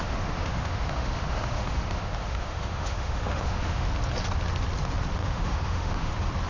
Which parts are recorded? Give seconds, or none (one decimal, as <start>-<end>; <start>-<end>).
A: 3.9-5.2; 6.1-6.5